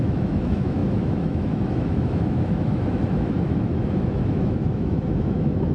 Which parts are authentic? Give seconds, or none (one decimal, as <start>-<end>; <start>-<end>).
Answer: none